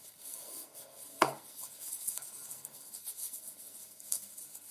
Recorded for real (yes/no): no